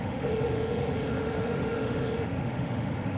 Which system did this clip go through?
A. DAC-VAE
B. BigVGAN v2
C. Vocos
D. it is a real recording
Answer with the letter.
A